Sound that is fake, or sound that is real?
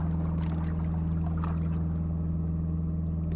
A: real